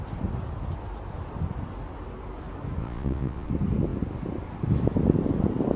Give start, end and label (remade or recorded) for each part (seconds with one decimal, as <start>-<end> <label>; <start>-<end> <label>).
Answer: 0.0-2.8 recorded; 2.8-3.5 remade; 3.5-5.8 recorded